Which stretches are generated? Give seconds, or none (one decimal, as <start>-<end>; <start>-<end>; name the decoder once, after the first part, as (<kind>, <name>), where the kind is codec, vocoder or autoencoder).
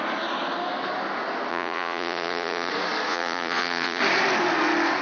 1.5-2.7 (vocoder, Vocos); 3.1-4.0